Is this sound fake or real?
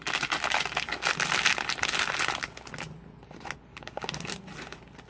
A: real